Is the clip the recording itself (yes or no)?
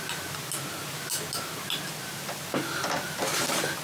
yes